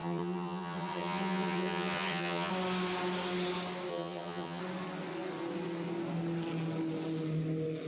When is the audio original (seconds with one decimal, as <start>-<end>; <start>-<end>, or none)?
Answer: 2.5-3.9; 4.6-7.9